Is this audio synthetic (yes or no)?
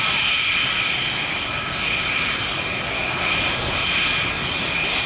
no